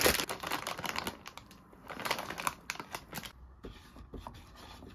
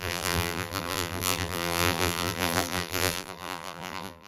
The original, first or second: first